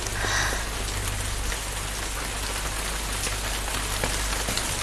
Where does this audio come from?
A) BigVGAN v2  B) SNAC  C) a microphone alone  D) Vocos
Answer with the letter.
C